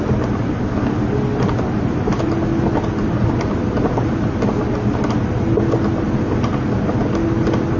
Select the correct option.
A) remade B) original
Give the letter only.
B